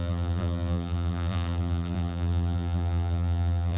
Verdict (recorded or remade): remade